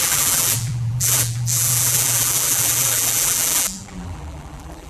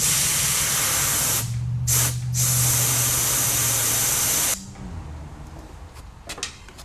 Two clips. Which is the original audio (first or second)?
second